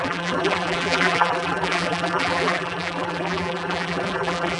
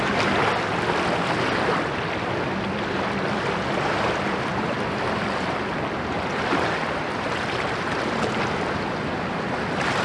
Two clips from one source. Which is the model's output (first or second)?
first